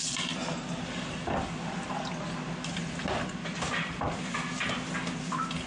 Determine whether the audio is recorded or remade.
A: recorded